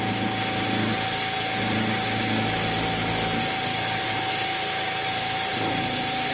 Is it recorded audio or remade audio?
recorded